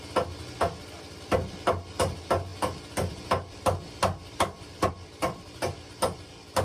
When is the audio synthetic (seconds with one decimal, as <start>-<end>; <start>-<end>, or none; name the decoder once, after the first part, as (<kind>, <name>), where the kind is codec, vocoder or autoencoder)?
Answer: none